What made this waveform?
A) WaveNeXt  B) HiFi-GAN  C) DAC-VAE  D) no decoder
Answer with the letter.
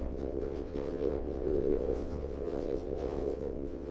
A